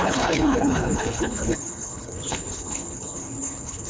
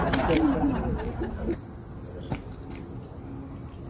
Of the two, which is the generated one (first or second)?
first